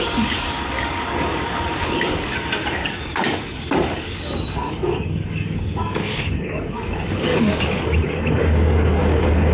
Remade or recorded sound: remade